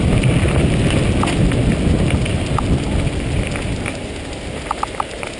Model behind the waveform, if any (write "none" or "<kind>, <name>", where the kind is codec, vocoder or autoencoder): none